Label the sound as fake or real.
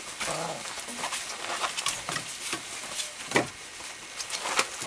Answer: real